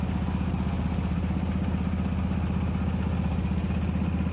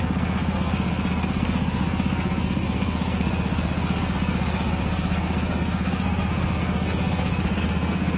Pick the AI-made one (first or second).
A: second